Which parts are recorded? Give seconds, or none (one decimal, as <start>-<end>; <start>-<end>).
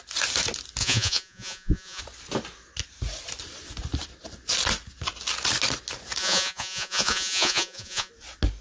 0.0-0.8; 2.0-6.2; 8.1-8.6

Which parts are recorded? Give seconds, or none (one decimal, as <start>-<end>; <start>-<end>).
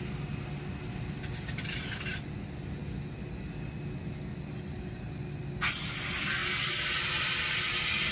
0.0-8.1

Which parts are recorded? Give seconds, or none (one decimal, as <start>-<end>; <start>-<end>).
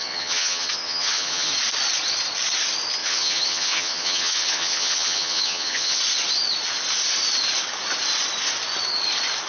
1.5-3.0; 6.0-9.5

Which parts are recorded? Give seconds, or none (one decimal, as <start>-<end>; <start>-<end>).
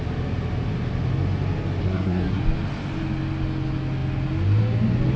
0.0-1.8; 2.4-5.2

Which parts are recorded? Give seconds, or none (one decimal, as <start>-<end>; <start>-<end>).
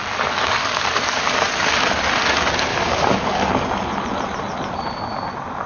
1.7-2.7; 3.5-5.7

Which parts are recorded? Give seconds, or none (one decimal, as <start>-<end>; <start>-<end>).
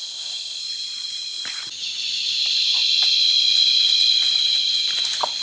0.6-5.4